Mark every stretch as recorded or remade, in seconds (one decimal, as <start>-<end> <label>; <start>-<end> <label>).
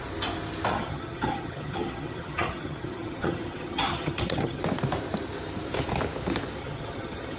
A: 0.0-0.7 recorded; 0.7-4.6 remade; 4.6-6.6 recorded; 6.6-7.4 remade